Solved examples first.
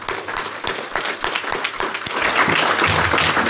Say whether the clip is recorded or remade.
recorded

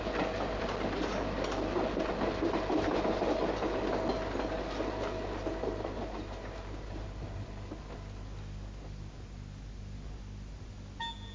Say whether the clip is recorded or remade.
recorded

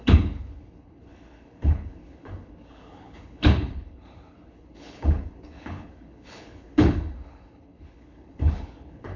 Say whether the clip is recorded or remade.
remade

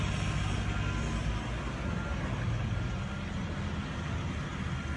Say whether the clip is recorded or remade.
recorded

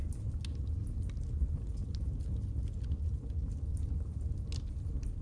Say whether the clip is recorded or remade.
recorded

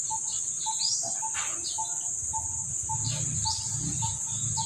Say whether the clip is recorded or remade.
recorded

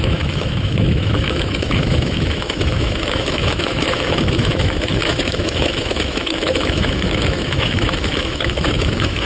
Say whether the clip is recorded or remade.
remade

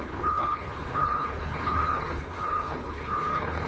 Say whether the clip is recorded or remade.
remade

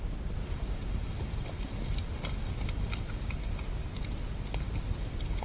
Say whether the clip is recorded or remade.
recorded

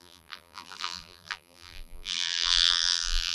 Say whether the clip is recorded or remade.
remade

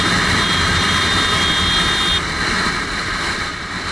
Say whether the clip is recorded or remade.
recorded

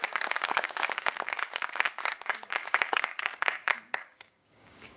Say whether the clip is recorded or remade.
remade